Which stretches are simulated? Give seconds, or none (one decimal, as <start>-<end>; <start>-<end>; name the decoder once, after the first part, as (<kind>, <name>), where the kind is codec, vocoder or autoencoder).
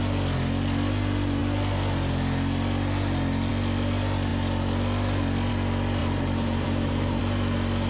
6.0-7.2 (vocoder, BigVGAN v2)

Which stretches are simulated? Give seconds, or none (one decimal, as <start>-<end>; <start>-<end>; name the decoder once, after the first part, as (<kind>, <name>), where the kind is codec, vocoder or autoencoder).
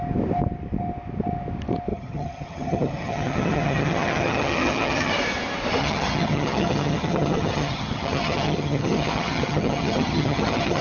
1.9-5.1 (vocoder, HiFi-GAN); 5.8-10.8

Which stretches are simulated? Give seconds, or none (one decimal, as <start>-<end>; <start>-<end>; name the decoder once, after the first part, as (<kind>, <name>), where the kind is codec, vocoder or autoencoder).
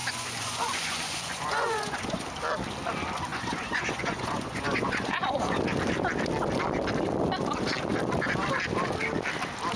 0.0-2.2 (vocoder, Vocos); 3.3-5.6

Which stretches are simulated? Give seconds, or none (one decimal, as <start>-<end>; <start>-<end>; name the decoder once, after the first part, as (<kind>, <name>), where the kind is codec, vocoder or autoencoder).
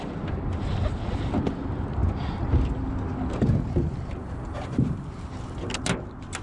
none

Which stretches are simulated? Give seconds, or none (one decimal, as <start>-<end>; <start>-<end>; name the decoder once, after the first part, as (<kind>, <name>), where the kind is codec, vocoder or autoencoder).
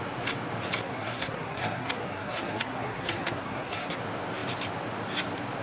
0.8-4.0 (codec, SNAC)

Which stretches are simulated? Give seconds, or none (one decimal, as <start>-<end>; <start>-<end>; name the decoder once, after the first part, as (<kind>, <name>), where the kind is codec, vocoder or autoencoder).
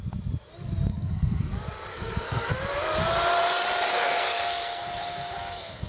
0.9-1.5 (codec, SNAC); 1.9-2.5; 3.9-5.9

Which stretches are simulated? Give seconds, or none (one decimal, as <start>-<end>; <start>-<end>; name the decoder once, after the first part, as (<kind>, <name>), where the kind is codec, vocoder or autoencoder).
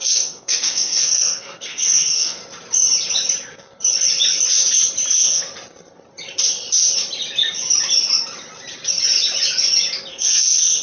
0.0-2.4 (codec, SNAC); 5.1-5.5; 10.1-10.8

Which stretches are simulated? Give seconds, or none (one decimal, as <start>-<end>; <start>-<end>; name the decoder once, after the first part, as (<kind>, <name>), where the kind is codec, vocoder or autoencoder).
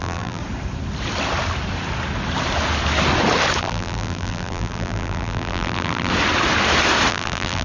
0.0-0.4 (vocoder, BigVGAN v2); 3.6-6.1; 7.1-7.6